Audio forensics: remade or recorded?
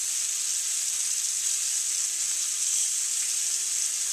recorded